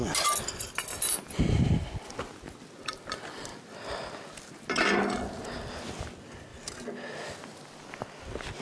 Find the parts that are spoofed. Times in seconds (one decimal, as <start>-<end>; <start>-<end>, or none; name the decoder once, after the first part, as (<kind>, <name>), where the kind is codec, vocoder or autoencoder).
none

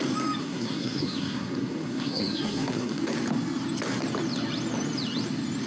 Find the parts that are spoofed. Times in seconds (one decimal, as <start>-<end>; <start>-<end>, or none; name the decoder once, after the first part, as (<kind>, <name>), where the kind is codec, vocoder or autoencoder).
0.4-3.0 (codec, SNAC)

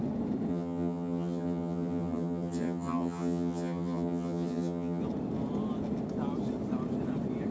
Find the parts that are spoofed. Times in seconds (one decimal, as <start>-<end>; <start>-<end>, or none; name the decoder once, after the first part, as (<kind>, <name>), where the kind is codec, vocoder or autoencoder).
0.5-5.0 (vocoder, HiFi-GAN)